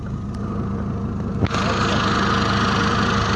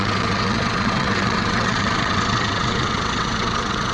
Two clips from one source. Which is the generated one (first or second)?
second